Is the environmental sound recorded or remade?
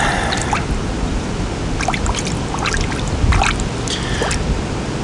recorded